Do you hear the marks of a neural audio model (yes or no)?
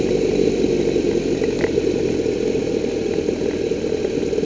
no